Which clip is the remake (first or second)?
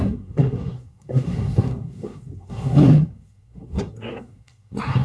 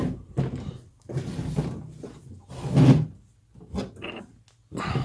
first